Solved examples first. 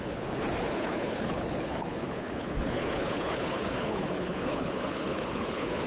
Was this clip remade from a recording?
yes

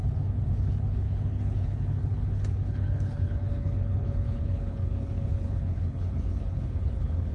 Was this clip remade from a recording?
yes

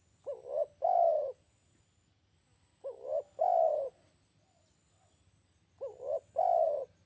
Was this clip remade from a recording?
no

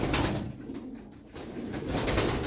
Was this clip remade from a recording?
no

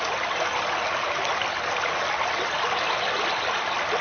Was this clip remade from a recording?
no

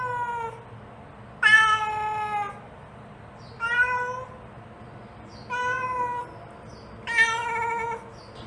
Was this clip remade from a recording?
no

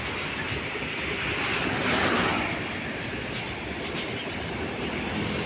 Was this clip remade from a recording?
no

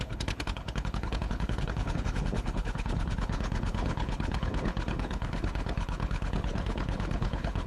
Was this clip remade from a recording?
yes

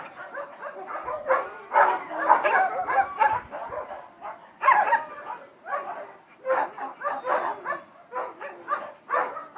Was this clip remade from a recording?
no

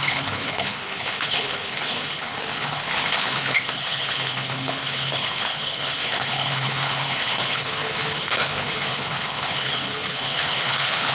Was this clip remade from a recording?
yes